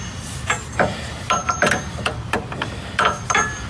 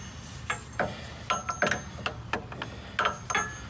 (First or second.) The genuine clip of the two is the second